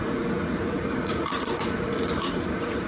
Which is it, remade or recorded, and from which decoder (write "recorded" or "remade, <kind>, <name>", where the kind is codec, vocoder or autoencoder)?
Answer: remade, vocoder, Vocos